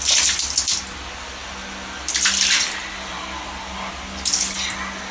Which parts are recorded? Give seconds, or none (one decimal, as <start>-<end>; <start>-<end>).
0.0-5.1